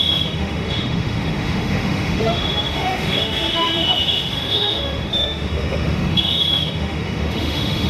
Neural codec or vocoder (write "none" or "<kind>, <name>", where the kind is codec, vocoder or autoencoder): autoencoder, DAC-VAE